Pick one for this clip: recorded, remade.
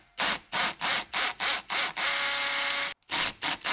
recorded